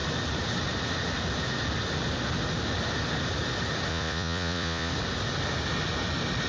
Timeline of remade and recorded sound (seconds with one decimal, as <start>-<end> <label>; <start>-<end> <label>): 0.0-3.9 recorded; 3.9-4.9 remade; 4.9-6.5 recorded